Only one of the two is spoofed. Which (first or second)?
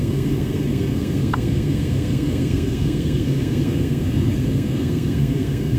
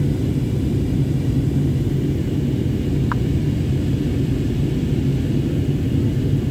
first